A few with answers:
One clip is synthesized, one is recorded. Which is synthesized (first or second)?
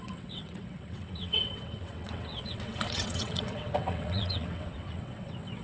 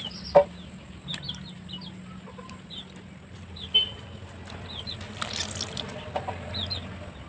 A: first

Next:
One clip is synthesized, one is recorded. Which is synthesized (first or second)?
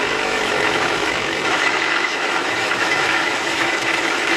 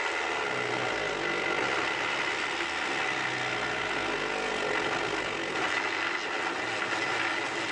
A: first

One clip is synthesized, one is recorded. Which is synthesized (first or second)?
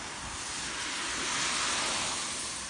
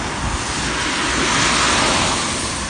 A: first